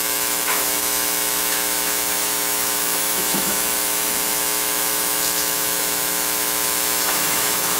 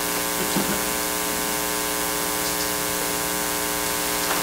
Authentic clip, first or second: second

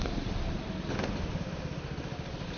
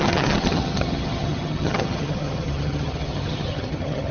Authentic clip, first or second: first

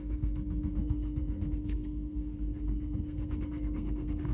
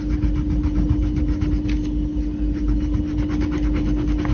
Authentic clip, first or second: second